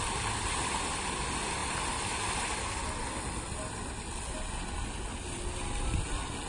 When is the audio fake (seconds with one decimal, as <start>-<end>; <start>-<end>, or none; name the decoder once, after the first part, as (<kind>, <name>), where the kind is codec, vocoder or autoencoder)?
none